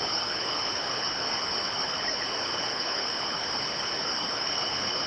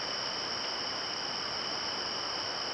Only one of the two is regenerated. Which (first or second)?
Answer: first